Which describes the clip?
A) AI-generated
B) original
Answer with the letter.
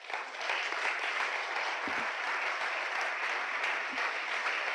A